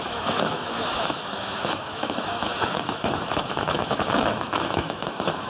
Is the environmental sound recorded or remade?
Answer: remade